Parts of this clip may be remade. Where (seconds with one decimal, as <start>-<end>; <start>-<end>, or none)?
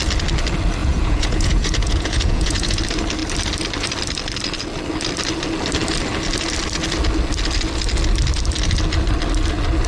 0.8-2.8